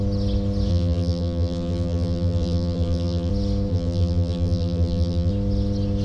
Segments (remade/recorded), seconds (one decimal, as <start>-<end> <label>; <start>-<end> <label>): 0.0-0.7 recorded; 0.7-3.3 remade; 3.3-3.7 recorded; 3.7-5.3 remade; 5.3-6.0 recorded